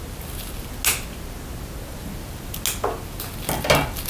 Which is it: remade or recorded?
recorded